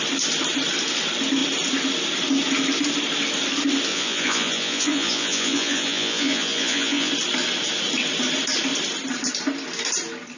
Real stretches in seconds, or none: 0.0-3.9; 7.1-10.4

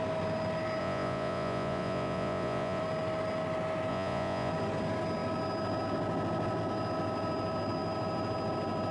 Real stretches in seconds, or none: 0.0-0.8; 2.8-3.9; 4.5-8.9

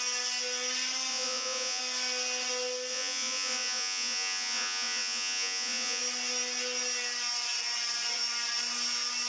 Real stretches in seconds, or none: 0.0-1.1; 1.8-2.9; 6.0-9.3